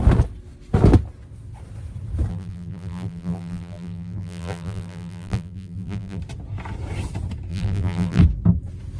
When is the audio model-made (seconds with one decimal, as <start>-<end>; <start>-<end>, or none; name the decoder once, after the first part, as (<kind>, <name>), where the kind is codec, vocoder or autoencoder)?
2.3-6.2 (vocoder, BigVGAN v2); 7.5-8.2